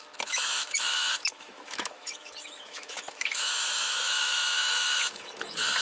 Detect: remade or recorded remade